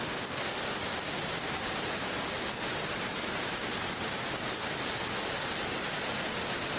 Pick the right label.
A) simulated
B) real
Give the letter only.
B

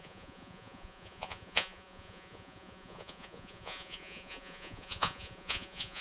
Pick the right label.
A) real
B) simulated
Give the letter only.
B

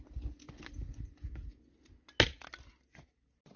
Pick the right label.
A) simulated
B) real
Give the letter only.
B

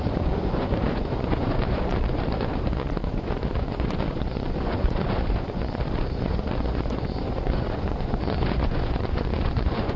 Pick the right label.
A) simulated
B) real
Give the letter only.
A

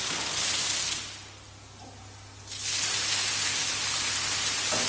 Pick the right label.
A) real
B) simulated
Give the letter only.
A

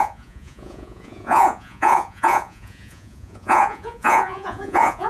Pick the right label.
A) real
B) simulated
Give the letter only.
B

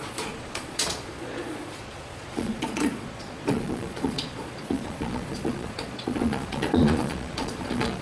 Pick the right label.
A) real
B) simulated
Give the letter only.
B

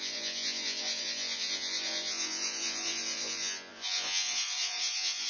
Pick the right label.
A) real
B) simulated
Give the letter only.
B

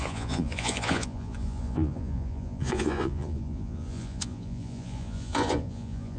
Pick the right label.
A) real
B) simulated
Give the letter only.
B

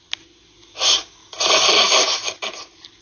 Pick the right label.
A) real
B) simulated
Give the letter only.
A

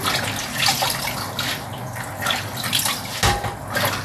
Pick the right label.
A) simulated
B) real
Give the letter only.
B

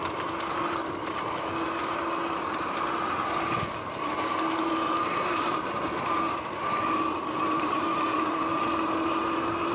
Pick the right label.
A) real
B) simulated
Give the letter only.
A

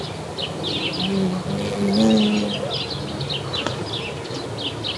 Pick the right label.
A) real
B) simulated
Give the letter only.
A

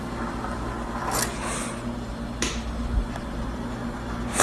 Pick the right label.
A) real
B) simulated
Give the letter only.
A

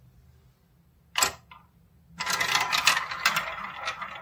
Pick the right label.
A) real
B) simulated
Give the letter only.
A